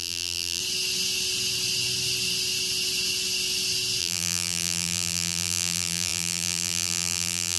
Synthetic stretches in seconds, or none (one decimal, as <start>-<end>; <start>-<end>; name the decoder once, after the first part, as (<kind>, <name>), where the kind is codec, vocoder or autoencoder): 0.0-0.6 (vocoder, BigVGAN v2); 4.0-7.6